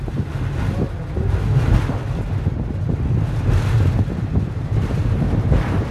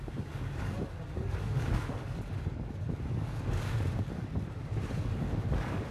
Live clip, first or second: first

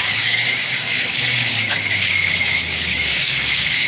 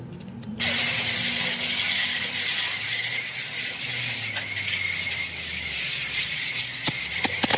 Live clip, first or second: second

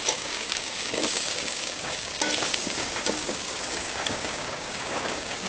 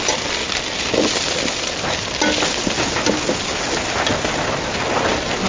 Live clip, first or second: second